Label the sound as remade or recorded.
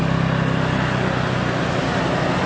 recorded